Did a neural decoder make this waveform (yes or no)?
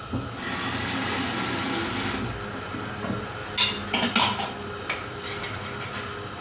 no